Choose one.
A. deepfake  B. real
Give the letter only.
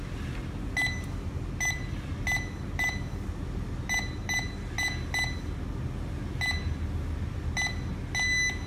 B